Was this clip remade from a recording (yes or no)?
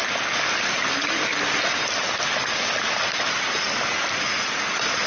no